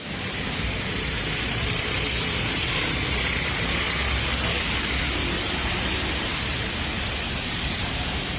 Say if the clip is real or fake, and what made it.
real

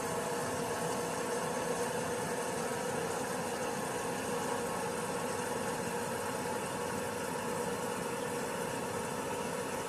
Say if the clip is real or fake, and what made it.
real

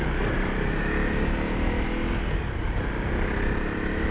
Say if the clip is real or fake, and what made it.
real